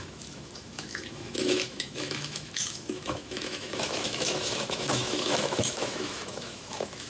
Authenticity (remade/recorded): remade